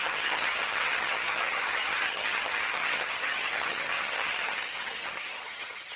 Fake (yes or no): yes